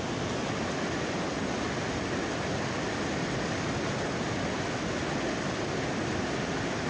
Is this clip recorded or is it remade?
recorded